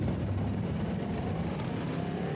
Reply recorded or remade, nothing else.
remade